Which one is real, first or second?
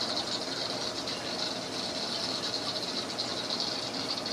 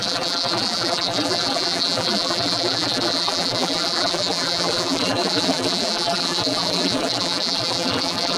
first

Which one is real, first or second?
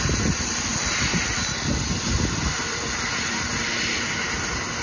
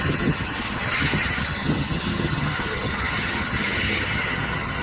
first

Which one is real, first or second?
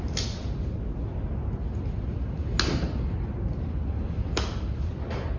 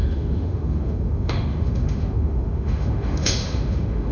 first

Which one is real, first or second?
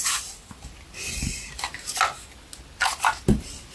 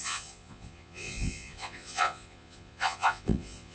first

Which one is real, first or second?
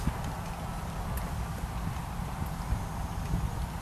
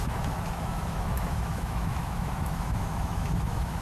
first